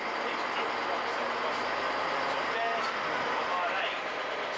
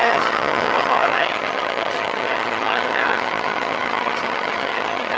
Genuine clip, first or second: first